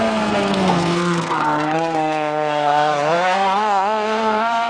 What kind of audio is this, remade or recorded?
remade